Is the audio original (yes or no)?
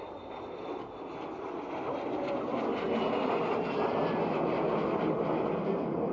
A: yes